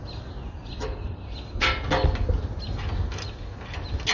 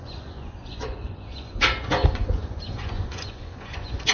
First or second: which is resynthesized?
second